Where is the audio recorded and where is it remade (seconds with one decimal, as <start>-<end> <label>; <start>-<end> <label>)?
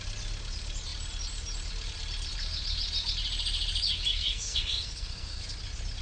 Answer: 0.0-4.1 recorded; 4.1-5.4 remade; 5.4-6.0 recorded